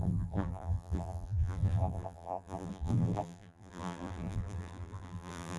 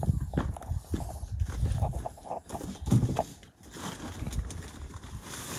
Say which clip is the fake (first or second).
first